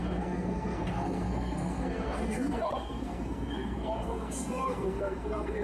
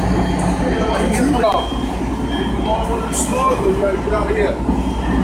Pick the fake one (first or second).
first